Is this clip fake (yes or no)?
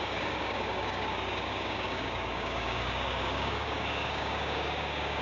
yes